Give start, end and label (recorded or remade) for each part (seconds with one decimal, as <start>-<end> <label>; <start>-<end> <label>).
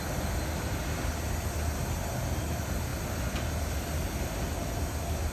0.0-5.3 recorded